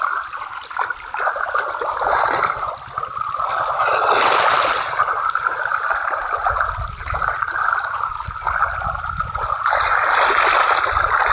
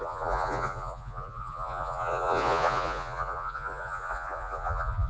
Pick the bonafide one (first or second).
first